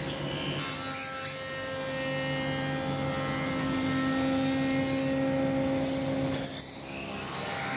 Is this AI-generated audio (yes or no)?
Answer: no